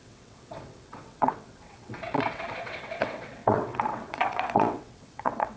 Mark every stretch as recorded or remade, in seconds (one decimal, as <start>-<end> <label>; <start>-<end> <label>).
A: 0.0-5.6 remade